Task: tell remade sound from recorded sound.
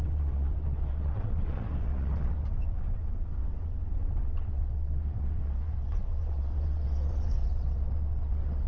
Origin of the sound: remade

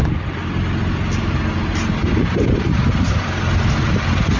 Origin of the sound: recorded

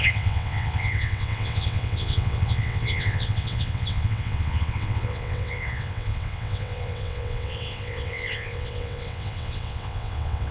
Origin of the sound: remade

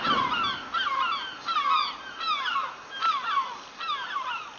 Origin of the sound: recorded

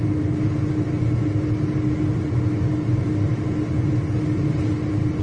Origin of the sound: recorded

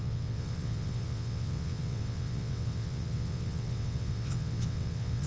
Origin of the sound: remade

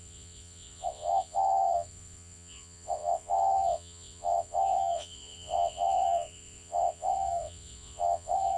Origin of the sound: remade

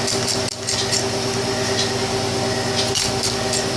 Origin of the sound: recorded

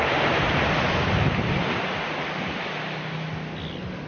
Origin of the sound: recorded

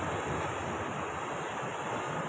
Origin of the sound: recorded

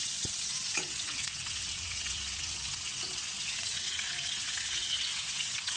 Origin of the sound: remade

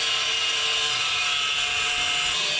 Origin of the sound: recorded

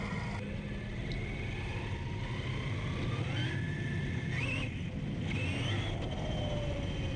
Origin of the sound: recorded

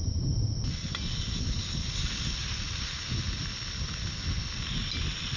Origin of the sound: recorded